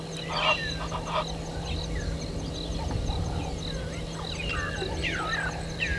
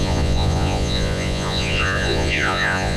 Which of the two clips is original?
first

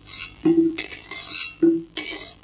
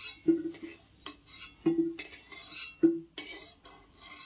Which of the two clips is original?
second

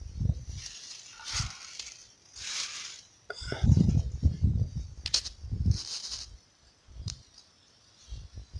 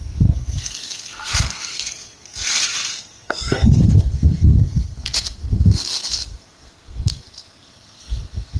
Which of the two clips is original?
first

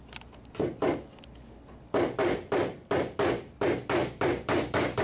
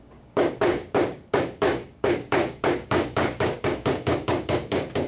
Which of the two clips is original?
first